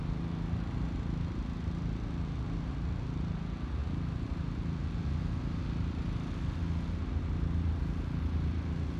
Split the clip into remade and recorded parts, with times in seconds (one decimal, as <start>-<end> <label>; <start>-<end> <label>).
0.0-9.0 recorded